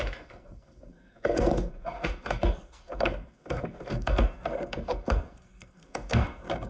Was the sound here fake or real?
fake